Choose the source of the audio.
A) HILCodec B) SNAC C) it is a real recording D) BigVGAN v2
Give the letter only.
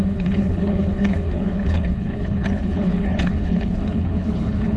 A